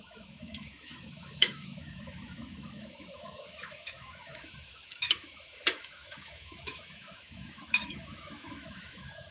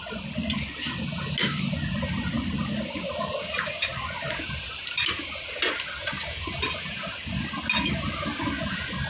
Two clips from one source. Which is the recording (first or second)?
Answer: second